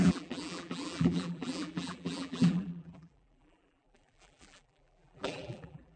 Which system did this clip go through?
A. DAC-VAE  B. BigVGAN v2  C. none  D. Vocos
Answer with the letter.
B